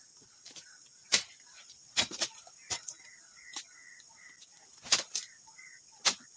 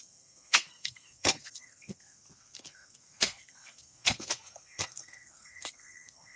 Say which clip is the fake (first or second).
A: second